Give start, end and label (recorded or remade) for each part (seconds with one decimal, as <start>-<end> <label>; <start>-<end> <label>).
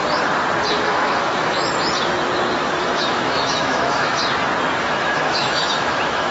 0.0-0.7 recorded; 0.7-1.6 remade; 1.6-2.8 recorded; 2.8-4.2 remade; 4.2-4.8 recorded; 4.8-6.3 remade